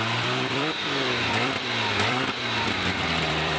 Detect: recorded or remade remade